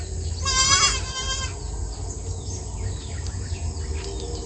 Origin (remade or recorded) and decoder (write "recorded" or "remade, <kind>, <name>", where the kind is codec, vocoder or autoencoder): recorded